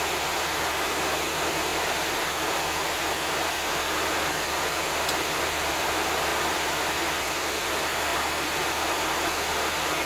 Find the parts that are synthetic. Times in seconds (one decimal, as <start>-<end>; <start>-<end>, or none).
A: 6.3-6.8; 8.1-8.7